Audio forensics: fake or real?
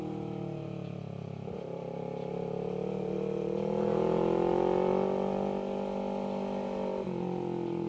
real